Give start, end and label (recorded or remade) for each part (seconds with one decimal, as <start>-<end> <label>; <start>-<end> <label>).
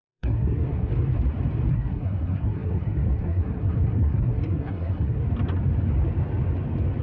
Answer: 0.0-0.9 remade; 0.9-1.7 recorded; 1.7-5.2 remade; 5.2-7.0 recorded